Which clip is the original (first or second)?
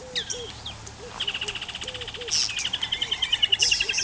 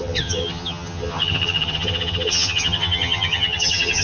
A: first